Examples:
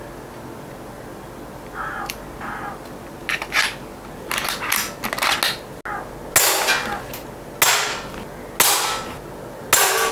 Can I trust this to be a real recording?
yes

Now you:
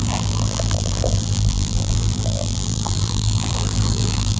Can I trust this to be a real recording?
no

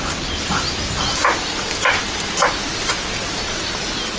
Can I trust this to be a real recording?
yes